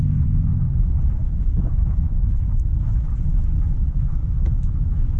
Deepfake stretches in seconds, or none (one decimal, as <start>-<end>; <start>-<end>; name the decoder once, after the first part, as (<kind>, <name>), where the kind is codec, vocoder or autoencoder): 1.2-3.1 (autoencoder, DAC-VAE); 4.2-5.2